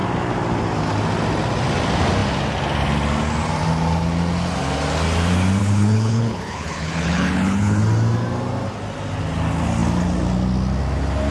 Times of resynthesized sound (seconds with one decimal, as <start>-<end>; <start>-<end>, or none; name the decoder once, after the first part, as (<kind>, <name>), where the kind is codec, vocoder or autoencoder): 5.6-7.8 (codec, HILCodec)